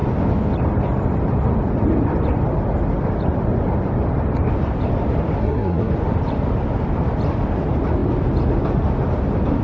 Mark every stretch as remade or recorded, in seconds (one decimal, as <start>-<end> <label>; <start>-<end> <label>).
0.0-5.4 recorded; 5.4-5.9 remade; 5.9-9.6 recorded